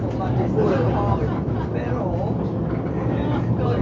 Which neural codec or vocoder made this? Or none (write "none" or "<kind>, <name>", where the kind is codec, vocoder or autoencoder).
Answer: none